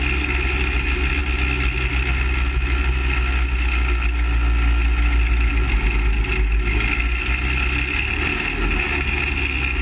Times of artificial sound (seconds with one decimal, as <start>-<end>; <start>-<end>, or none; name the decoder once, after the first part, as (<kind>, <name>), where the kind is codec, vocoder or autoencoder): none